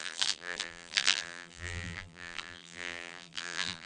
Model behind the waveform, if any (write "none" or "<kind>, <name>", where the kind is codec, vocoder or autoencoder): vocoder, BigVGAN v2